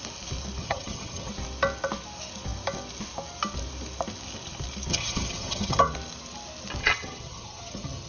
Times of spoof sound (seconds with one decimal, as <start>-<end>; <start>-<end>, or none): 0.6-1.3; 4.9-5.8; 6.8-8.1